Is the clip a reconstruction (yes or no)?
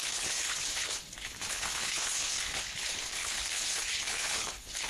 yes